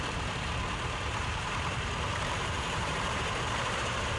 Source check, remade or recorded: remade